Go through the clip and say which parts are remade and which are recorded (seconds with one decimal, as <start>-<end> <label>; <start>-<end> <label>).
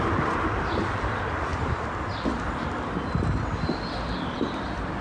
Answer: 0.0-5.0 recorded